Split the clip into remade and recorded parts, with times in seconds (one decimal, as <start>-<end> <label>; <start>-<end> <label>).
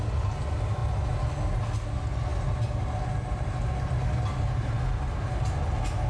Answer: 0.0-6.1 recorded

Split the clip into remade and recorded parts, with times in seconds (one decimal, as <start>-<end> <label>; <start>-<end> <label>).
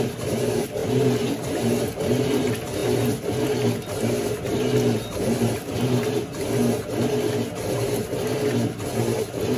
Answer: 0.0-9.6 recorded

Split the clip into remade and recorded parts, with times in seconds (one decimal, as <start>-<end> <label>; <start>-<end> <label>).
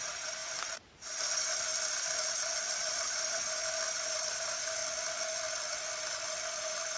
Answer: 0.0-1.7 remade; 1.7-2.9 recorded; 2.9-4.8 remade; 4.8-6.5 recorded; 6.5-7.0 remade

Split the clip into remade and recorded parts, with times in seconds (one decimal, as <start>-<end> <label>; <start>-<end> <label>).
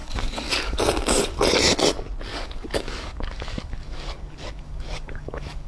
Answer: 0.0-0.8 remade; 0.8-2.3 recorded; 2.3-5.7 remade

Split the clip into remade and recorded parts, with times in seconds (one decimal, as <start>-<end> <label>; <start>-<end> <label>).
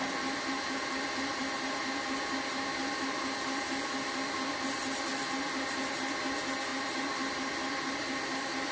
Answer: 0.0-8.7 recorded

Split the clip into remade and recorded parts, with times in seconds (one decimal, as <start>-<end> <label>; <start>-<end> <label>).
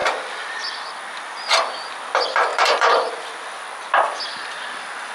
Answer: 0.0-2.5 recorded; 2.5-3.1 remade; 3.1-5.1 recorded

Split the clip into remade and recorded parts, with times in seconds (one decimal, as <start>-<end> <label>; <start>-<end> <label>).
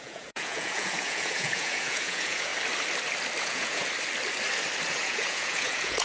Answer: 0.0-2.5 remade; 2.5-3.4 recorded; 3.4-3.8 remade; 3.8-4.9 recorded; 4.9-6.0 remade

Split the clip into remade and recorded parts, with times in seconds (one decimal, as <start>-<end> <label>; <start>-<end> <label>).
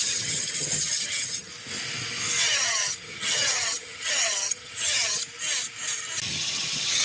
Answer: 0.0-1.5 remade; 1.5-2.4 recorded; 2.4-5.2 remade; 5.2-6.4 recorded; 6.4-7.0 remade